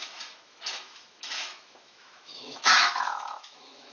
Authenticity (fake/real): fake